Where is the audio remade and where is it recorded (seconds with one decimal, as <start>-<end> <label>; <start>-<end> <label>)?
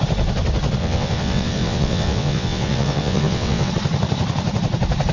0.0-0.8 recorded; 0.8-3.7 remade; 3.7-5.1 recorded